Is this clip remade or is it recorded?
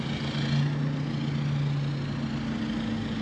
recorded